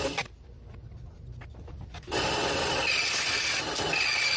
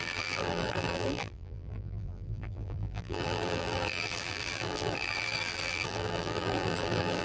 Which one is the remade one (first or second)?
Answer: second